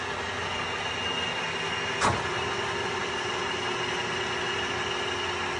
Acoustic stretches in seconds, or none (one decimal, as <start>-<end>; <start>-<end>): 0.0-5.6